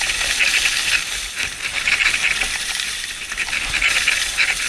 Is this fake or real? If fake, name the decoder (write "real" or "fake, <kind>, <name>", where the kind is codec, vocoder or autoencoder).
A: real